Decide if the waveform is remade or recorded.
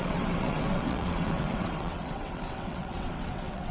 remade